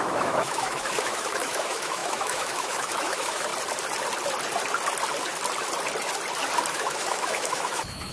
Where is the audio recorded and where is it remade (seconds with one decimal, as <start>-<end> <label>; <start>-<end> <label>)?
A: 0.0-3.5 remade; 3.5-6.7 recorded; 6.7-8.1 remade